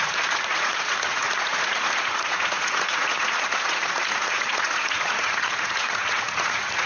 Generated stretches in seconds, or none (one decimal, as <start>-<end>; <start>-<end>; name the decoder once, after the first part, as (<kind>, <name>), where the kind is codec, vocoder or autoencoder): 0.0-6.9 (vocoder, Vocos)